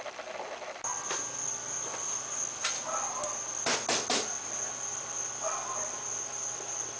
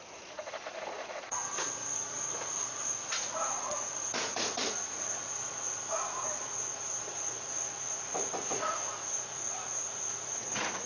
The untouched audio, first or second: first